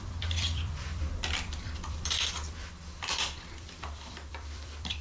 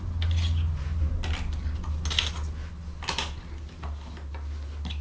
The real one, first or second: second